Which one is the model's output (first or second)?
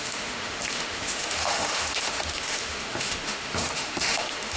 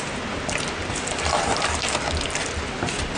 first